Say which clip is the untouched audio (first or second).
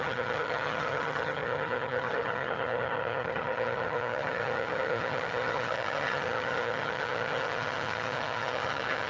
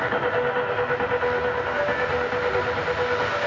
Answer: second